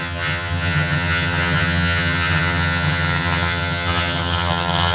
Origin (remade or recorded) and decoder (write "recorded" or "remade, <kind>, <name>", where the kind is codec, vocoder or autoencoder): remade, vocoder, HiFi-GAN